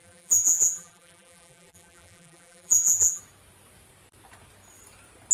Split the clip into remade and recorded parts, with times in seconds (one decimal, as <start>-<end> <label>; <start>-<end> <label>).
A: 0.0-3.2 remade; 3.2-5.3 recorded